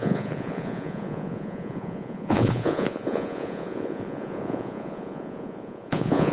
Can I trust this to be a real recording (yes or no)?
no